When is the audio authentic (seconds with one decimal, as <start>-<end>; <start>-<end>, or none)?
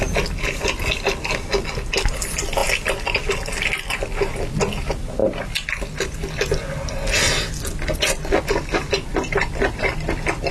0.0-10.5